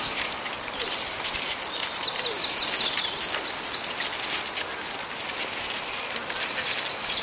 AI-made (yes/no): no